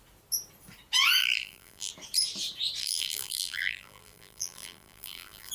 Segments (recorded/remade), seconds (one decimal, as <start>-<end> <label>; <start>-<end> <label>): 0.0-1.2 recorded; 1.2-1.9 remade; 1.9-2.8 recorded; 2.8-5.5 remade